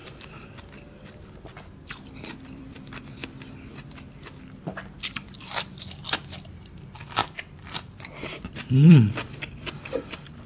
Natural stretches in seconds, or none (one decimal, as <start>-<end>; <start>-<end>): 0.0-2.4; 3.2-4.1; 7.2-8.3